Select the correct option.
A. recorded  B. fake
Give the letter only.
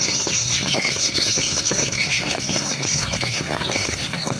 B